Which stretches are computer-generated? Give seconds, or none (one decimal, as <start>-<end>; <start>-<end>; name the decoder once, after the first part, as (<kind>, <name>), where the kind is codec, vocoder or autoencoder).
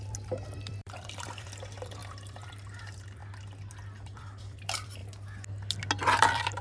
0.0-3.2 (vocoder, BigVGAN v2); 3.7-5.0; 6.0-6.6